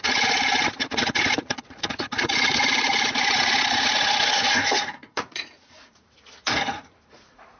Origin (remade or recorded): remade